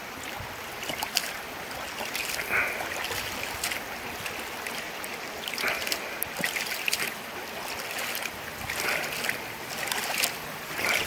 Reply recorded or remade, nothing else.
recorded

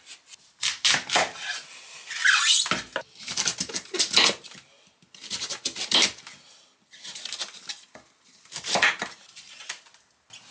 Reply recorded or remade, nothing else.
recorded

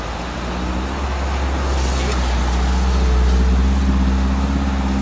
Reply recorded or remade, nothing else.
recorded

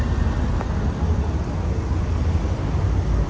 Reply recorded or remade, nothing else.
recorded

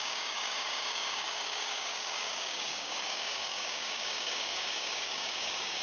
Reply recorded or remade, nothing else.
remade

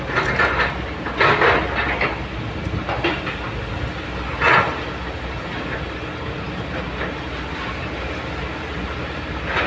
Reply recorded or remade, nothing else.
recorded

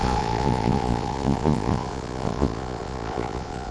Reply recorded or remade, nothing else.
remade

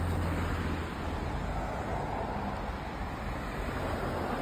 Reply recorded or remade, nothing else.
recorded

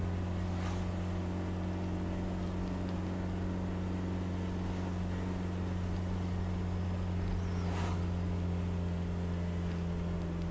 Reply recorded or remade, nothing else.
recorded